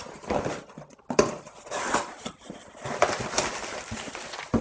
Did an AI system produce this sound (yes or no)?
yes